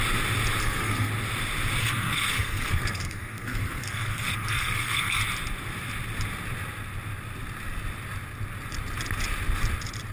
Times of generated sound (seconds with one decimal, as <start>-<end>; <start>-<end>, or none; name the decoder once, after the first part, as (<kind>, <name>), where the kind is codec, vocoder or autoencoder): 0.6-1.1 (codec, SNAC); 1.8-5.2